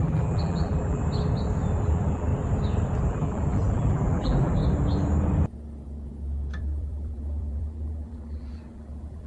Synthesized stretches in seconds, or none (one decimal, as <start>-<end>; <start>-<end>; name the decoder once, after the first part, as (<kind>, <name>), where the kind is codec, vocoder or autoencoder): 0.0-1.0 (vocoder, BigVGAN v2); 1.8-2.3; 3.0-4.6; 6.6-9.3

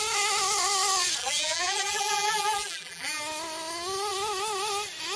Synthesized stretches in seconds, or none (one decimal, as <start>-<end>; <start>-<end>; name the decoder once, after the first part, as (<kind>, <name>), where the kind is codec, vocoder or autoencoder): 1.2-3.2 (vocoder, BigVGAN v2)

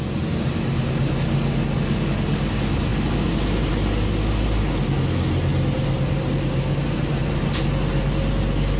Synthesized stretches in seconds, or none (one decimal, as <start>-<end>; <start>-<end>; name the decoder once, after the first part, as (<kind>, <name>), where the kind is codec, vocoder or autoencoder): 5.5-7.5 (vocoder, BigVGAN v2)

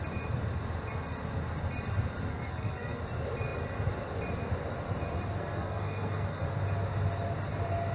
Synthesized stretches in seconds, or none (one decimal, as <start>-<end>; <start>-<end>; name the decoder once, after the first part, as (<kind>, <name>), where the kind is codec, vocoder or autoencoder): 2.3-3.0 (codec, SNAC); 5.4-6.5

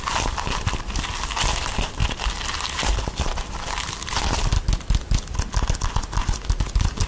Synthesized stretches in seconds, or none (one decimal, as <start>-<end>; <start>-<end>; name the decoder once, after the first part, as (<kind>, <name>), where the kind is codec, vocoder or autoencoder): none

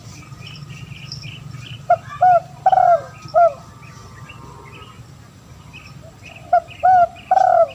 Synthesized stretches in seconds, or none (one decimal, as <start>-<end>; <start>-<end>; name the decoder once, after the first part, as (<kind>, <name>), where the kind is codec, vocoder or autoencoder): none